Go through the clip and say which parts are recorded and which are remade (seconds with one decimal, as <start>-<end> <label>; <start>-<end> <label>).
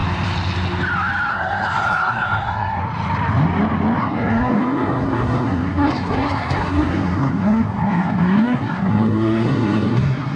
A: 0.0-1.3 recorded; 1.3-2.8 remade; 2.8-4.0 recorded; 4.0-10.4 remade